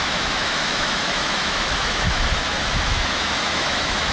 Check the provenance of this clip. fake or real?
fake